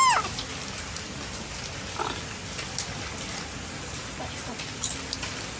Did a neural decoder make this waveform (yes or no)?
no